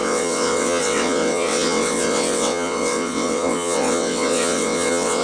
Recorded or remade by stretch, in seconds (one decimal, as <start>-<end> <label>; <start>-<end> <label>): 0.0-5.2 remade